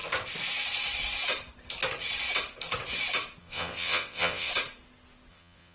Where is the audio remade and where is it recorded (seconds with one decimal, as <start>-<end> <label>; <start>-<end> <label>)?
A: 0.0-3.4 recorded; 3.4-4.5 remade; 4.5-5.3 recorded; 5.3-5.7 remade

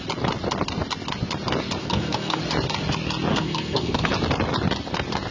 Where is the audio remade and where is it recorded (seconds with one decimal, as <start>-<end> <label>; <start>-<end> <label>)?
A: 0.0-1.8 recorded; 1.8-2.4 remade; 2.4-3.3 recorded; 3.3-4.1 remade; 4.1-5.3 recorded

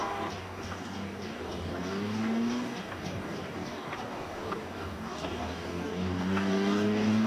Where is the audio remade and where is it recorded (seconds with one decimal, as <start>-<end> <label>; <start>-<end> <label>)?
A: 0.0-7.3 remade